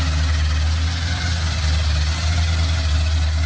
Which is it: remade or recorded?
recorded